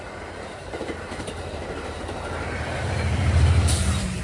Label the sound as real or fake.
fake